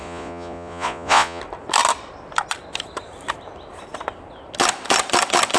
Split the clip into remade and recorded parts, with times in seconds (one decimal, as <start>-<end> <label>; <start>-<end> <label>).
0.0-1.4 remade; 1.4-5.6 recorded